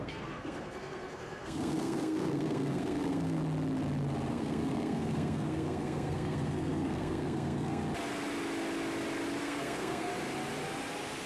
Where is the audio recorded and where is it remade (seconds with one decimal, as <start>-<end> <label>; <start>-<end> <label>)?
0.0-3.4 remade; 3.4-4.3 recorded; 4.3-7.8 remade; 7.8-9.4 recorded; 9.4-10.1 remade; 10.1-11.3 recorded